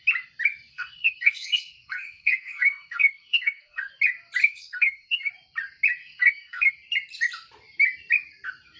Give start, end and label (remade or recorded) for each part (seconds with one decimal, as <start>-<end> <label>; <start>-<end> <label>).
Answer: 0.0-0.7 recorded; 0.7-3.9 remade; 3.9-4.4 recorded; 4.4-5.3 remade; 5.3-6.0 recorded; 6.0-6.7 remade; 6.7-8.8 recorded